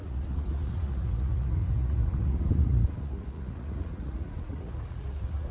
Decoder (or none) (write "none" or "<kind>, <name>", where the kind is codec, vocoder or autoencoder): vocoder, Vocos